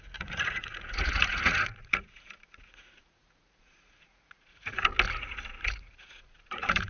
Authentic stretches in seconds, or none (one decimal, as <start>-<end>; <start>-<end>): 4.9-5.6